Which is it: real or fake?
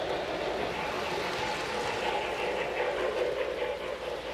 real